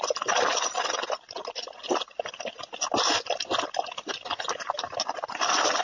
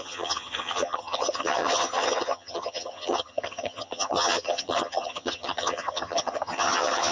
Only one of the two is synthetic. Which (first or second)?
second